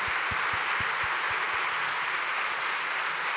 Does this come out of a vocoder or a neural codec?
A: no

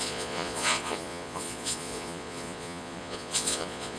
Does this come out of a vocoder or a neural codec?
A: yes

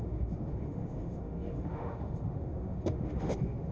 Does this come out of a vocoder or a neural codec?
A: yes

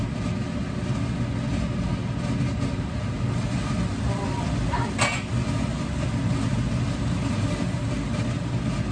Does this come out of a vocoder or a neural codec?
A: no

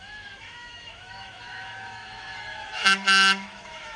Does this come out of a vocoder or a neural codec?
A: yes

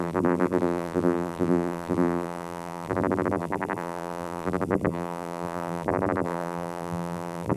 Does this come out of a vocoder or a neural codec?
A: yes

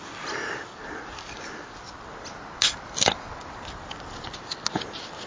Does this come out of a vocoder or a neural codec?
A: no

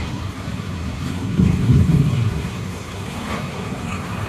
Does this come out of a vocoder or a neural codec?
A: yes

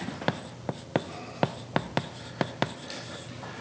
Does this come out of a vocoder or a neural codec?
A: no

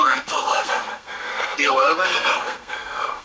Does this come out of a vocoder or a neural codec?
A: yes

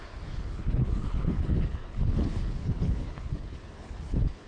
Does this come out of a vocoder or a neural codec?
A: yes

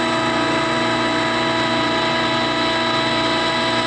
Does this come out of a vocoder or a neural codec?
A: no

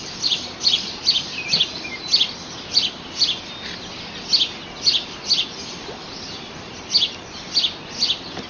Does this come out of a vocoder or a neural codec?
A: no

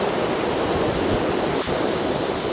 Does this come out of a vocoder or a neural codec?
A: no